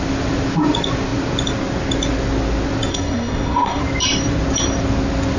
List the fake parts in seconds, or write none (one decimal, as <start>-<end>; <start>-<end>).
2.9-3.8